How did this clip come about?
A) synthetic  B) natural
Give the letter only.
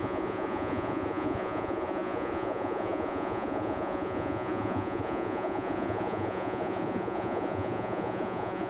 A